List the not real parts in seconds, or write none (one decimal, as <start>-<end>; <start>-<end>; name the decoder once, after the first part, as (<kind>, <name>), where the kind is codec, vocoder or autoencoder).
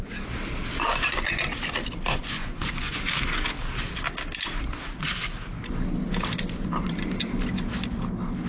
2.1-3.0 (vocoder, Vocos)